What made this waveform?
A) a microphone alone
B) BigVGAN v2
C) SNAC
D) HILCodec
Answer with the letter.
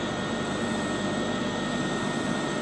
A